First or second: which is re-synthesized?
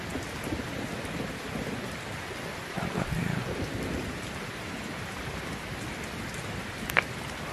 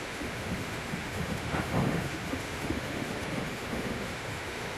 second